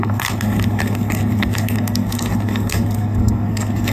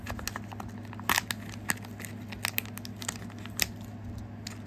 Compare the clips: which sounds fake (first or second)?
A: first